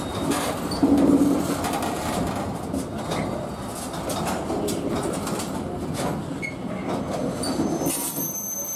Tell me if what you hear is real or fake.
real